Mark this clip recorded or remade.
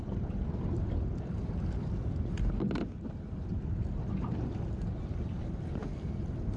recorded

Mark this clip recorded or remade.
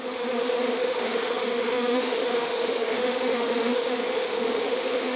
remade